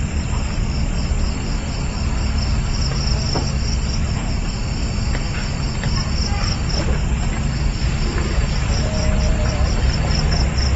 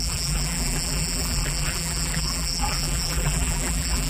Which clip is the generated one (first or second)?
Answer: second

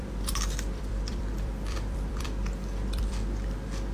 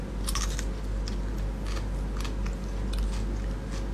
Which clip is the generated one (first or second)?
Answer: first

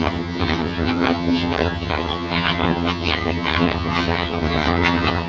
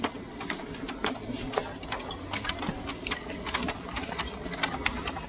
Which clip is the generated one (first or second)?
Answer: first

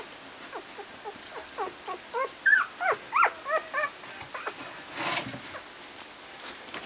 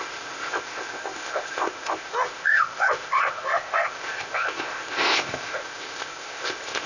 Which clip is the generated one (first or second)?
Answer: second